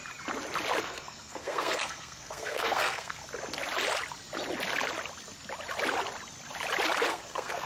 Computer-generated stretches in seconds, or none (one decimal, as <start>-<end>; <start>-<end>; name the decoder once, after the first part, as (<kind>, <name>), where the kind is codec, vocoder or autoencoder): 0.8-3.2 (codec, SNAC); 7.1-7.7